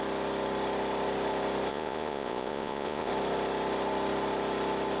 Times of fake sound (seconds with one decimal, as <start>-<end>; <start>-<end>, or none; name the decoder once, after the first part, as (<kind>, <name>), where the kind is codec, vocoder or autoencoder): 1.7-3.1 (vocoder, Vocos)